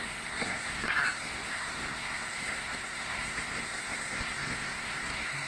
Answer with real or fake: fake